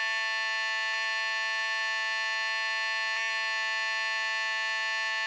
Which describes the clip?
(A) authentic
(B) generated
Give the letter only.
A